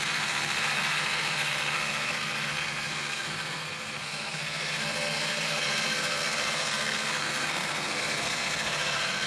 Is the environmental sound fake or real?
fake